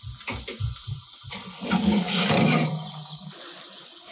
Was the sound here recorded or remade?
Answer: recorded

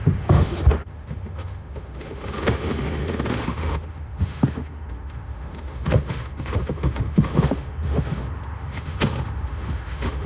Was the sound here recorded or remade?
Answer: remade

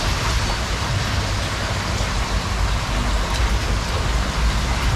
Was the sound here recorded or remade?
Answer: recorded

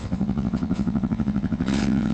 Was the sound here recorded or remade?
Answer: remade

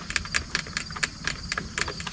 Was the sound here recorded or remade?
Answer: recorded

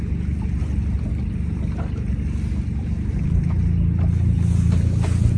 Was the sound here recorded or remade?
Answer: recorded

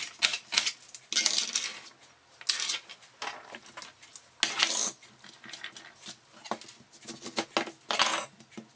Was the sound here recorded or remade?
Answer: recorded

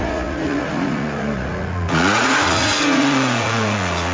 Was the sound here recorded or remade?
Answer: remade